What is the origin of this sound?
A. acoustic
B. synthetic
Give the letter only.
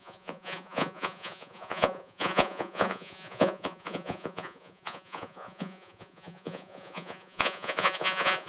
B